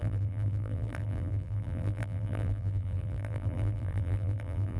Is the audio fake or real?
fake